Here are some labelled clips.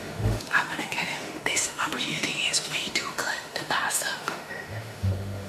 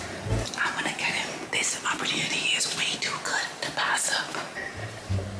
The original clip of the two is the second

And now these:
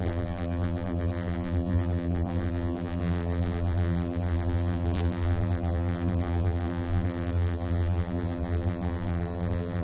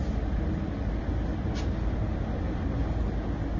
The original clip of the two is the second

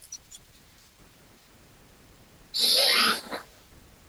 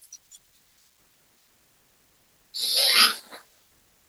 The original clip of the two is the second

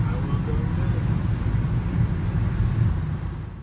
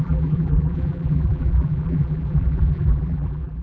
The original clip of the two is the first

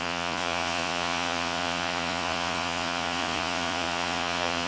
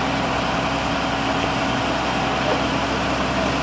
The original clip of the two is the second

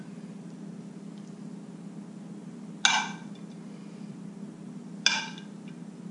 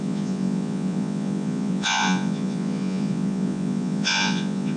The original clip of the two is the first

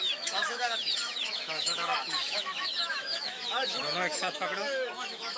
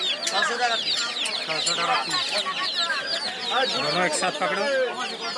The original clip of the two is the second